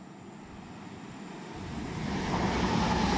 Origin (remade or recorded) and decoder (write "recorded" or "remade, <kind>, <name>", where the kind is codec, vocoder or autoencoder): recorded